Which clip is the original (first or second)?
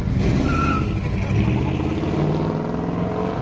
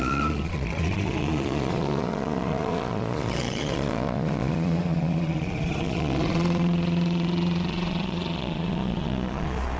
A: first